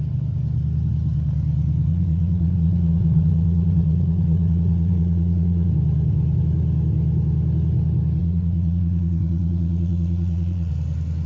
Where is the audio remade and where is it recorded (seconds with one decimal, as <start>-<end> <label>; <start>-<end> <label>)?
0.0-1.9 recorded; 1.9-5.7 remade; 5.7-8.2 recorded; 8.2-10.7 remade; 10.7-11.3 recorded